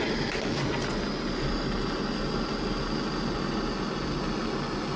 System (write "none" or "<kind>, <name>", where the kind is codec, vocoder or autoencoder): none